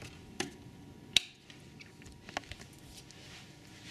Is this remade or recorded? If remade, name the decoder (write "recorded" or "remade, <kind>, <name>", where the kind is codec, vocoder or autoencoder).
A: recorded